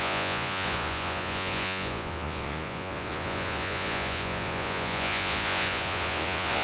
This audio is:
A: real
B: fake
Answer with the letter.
B